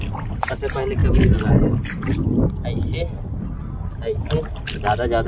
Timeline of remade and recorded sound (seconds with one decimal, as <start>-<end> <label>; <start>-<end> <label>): 0.0-5.3 recorded